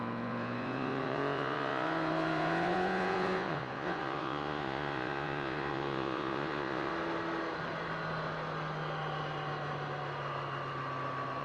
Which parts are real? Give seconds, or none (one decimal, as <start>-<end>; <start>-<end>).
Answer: 6.9-11.4